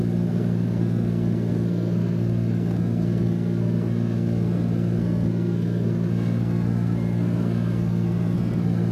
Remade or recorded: remade